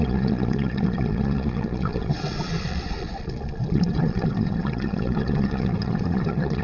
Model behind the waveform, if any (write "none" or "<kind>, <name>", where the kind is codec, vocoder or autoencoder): vocoder, Vocos